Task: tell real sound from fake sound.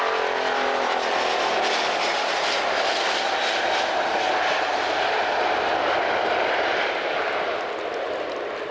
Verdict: real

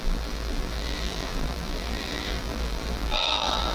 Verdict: fake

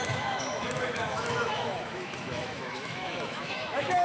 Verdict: fake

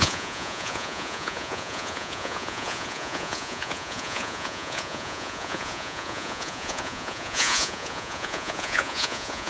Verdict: fake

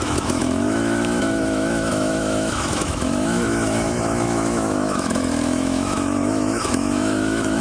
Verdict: fake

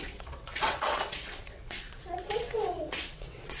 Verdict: fake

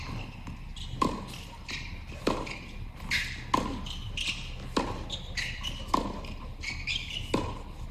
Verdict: real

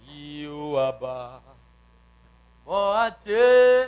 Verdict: real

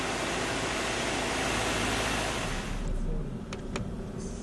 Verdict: real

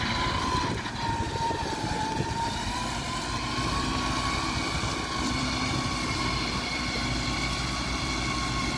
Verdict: fake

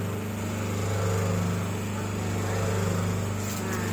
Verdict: real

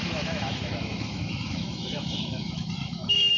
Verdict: fake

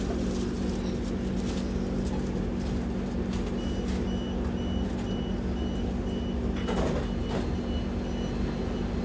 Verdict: real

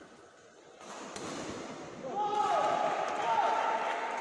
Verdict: real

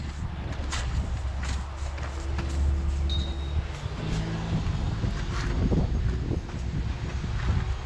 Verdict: real